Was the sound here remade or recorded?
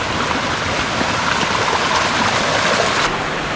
recorded